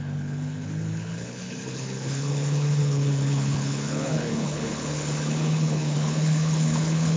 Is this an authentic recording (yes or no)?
no